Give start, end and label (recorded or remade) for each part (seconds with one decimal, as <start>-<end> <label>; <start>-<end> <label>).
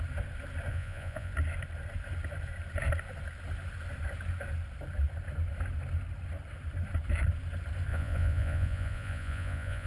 0.0-0.7 recorded; 0.7-1.3 remade; 1.3-7.9 recorded; 7.9-9.9 remade